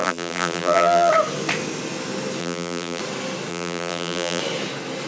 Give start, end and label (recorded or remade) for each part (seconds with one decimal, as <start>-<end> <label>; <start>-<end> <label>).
0.0-1.1 remade; 1.1-2.4 recorded; 2.4-3.0 remade; 3.0-3.5 recorded; 3.5-4.4 remade; 4.4-5.1 recorded